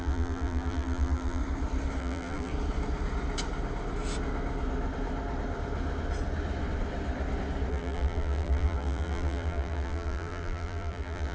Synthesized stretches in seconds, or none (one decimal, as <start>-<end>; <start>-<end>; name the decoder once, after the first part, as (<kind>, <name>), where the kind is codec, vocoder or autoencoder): 0.0-1.4 (vocoder, BigVGAN v2); 2.0-2.5; 7.7-11.3

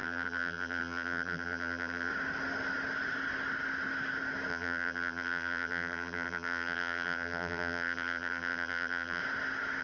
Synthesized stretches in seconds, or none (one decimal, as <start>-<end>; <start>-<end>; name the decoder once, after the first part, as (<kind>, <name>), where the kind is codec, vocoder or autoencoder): 0.0-2.1 (vocoder, BigVGAN v2); 4.5-9.2

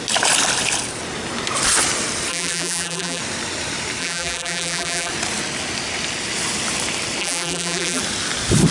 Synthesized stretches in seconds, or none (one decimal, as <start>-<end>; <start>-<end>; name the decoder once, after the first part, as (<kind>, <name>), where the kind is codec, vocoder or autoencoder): 2.3-3.2 (vocoder, BigVGAN v2); 4.0-5.1; 7.2-8.0